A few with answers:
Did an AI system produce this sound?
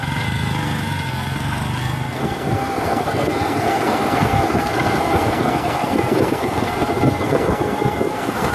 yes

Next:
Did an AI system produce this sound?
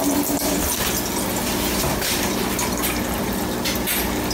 no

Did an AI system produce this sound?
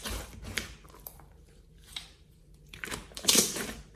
yes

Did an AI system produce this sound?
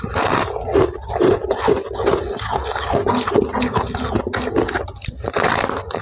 no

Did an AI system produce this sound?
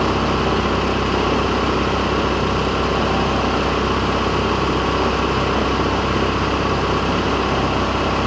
no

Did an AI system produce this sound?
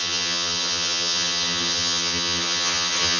yes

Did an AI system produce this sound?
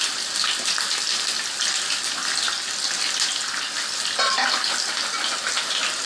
no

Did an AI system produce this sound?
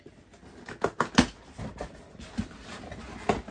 no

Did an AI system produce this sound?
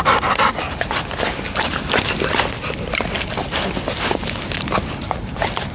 no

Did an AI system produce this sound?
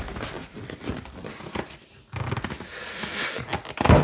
no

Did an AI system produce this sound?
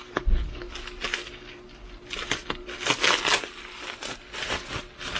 no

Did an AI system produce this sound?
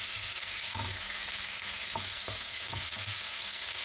yes